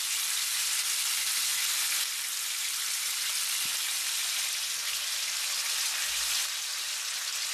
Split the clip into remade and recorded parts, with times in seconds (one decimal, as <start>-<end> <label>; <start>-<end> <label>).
0.0-7.5 recorded